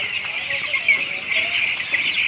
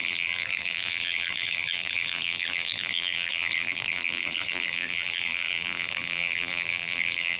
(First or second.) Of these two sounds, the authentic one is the first